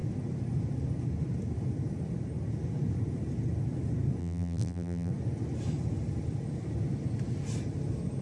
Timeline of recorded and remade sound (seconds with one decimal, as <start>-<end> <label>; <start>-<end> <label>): 0.0-4.2 recorded; 4.2-5.1 remade; 5.1-8.2 recorded